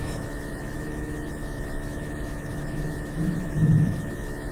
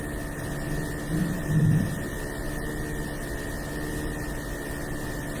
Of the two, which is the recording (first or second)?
second